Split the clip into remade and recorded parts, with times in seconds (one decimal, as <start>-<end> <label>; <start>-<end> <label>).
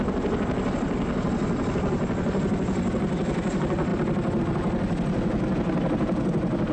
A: 0.0-6.7 recorded